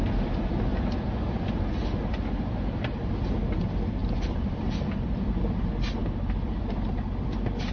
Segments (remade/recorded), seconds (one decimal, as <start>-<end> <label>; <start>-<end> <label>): 0.0-4.0 recorded; 4.0-5.2 remade; 5.2-7.7 recorded